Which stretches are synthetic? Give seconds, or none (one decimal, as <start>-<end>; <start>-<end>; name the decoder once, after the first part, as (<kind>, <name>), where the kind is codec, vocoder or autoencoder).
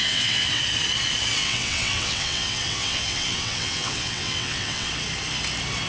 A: 0.0-0.6 (vocoder, WaveNeXt); 1.4-4.9